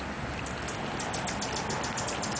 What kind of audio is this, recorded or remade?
recorded